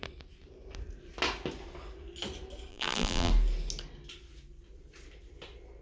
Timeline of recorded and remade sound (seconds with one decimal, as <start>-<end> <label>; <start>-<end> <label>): 0.0-2.7 recorded; 2.7-3.3 remade; 3.3-5.8 recorded